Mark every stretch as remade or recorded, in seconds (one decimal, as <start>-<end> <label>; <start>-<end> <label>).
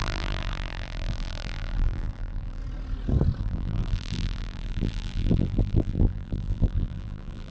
0.0-2.6 remade; 2.6-3.4 recorded; 3.4-7.5 remade